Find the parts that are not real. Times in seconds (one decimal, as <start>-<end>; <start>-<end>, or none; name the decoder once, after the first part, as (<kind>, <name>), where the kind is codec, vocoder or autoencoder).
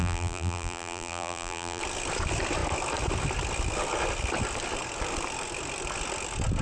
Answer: 0.0-1.8 (vocoder, BigVGAN v2)